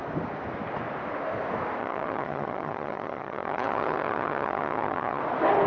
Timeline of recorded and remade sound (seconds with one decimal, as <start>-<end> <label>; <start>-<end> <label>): 0.0-1.8 recorded; 1.8-5.2 remade; 5.2-5.7 recorded